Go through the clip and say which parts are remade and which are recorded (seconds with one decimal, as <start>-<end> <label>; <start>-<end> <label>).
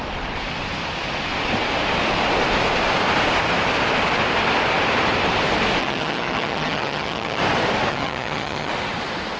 0.0-5.8 recorded; 5.8-7.4 remade; 7.4-7.9 recorded; 7.9-8.7 remade; 8.7-9.4 recorded